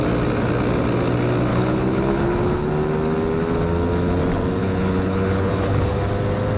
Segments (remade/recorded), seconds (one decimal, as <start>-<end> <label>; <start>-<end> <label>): 0.0-1.5 recorded; 1.5-2.7 remade; 2.7-4.6 recorded; 4.6-6.0 remade; 6.0-6.6 recorded